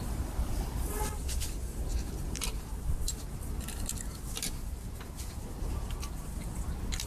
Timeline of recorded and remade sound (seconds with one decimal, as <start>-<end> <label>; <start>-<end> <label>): 0.0-1.9 remade; 1.9-6.2 recorded; 6.2-7.1 remade